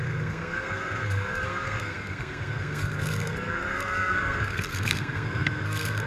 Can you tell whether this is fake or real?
fake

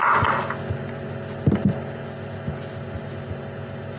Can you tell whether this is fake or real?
real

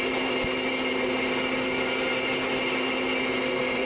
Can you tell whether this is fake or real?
real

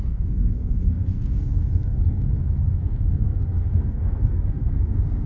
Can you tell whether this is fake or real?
fake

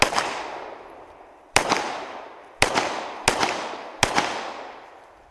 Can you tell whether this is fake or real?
real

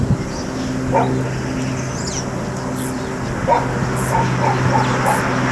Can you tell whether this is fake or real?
real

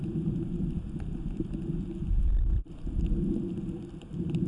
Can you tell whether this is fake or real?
real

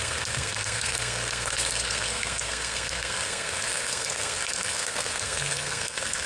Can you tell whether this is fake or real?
fake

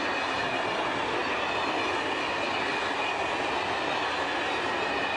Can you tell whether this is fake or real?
real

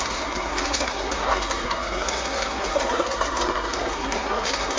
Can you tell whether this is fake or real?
fake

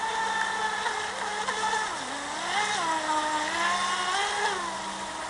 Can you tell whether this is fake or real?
real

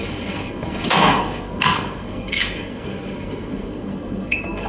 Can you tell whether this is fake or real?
fake